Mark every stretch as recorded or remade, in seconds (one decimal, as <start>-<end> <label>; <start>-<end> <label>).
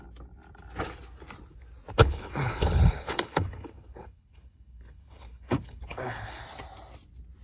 0.0-2.0 recorded; 2.0-6.4 remade; 6.4-7.4 recorded